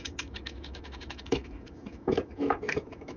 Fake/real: fake